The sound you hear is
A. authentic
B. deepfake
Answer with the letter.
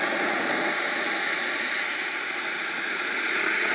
B